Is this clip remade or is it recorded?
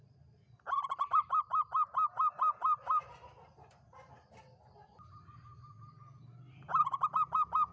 recorded